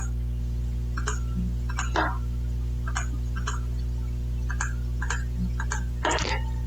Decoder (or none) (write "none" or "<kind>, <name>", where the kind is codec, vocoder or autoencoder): none